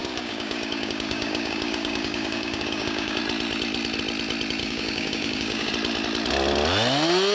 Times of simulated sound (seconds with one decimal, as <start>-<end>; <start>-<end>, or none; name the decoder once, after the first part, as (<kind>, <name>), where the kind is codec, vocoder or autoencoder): 0.0-3.2 (codec, DAC); 4.6-5.7